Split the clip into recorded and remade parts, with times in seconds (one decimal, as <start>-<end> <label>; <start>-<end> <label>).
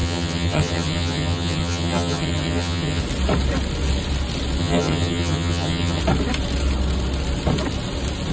0.0-3.0 remade; 3.0-4.6 recorded; 4.6-6.0 remade; 6.0-8.3 recorded